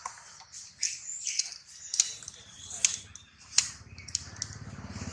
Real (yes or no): yes